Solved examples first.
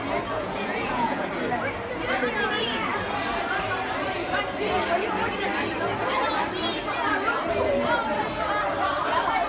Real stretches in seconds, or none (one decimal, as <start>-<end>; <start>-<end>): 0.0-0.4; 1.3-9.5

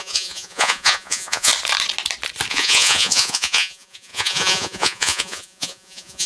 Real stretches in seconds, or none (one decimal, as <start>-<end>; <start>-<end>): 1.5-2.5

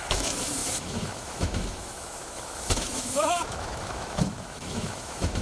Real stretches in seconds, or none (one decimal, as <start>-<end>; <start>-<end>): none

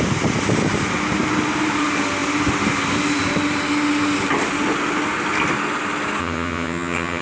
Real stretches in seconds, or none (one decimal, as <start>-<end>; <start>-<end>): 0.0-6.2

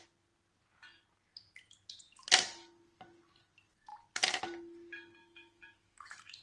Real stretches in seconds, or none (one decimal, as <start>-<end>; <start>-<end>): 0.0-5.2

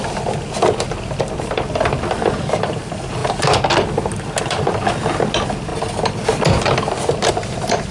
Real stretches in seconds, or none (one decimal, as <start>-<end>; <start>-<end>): 3.2-4.4; 5.7-7.3

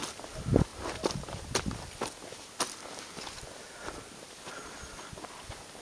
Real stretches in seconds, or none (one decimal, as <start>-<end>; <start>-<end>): 0.0-5.8

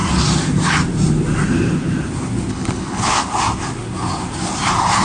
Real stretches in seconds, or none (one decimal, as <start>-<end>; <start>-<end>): 0.0-2.5; 3.2-5.0